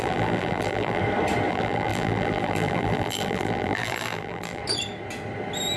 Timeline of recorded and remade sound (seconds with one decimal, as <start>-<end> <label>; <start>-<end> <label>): 0.0-1.0 remade; 1.0-1.5 recorded; 1.5-4.6 remade; 4.6-5.8 recorded